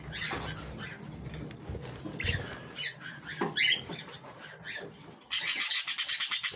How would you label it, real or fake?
real